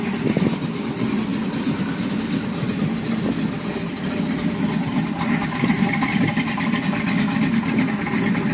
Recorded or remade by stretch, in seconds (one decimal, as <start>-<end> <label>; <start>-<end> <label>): 0.0-5.4 recorded; 5.4-6.7 remade; 6.7-8.5 recorded